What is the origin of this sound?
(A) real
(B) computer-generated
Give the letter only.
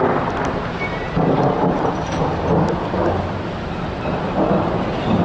A